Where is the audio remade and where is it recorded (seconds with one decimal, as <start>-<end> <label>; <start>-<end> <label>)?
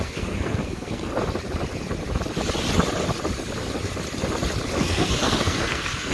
0.0-1.1 remade; 1.1-4.8 recorded; 4.8-6.1 remade